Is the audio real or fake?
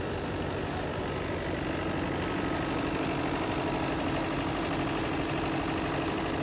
real